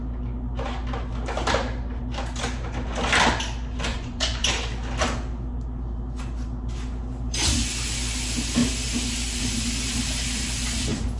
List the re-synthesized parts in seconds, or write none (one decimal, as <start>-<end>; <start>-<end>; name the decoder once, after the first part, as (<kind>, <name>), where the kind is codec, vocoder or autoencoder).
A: 3.9-4.5 (vocoder, Vocos)